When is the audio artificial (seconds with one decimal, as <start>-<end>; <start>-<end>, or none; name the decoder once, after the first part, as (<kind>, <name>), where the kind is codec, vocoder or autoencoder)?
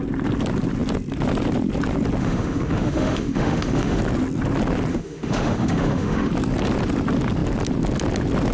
2.2-4.0 (autoencoder, DAC-VAE); 4.9-6.3